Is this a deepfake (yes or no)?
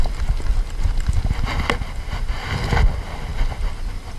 no